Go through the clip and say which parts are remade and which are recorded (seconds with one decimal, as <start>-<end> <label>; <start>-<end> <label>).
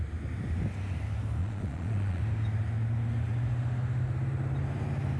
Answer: 0.0-1.4 recorded; 1.4-2.2 remade; 2.2-5.2 recorded